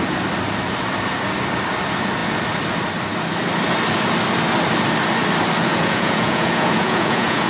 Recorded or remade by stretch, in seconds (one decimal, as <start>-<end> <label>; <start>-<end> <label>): 0.0-5.7 recorded; 5.7-7.5 remade